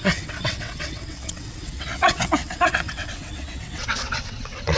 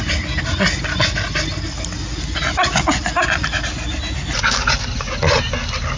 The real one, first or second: second